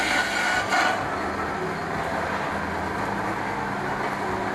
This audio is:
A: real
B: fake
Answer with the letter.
A